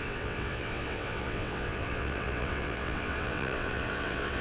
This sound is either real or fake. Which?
fake